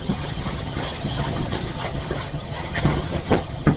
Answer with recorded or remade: remade